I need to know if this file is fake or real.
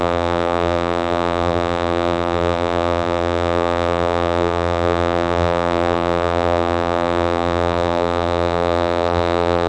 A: fake